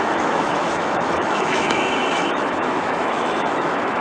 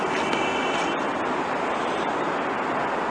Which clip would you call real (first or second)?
second